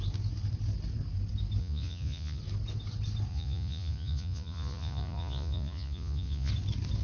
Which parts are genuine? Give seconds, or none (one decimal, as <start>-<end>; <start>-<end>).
0.0-1.6; 2.4-3.3; 6.5-7.0